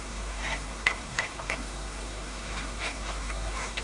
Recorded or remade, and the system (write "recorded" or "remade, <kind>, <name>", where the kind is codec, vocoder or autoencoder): remade, codec, SNAC